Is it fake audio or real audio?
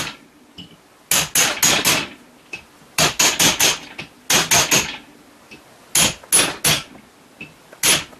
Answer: real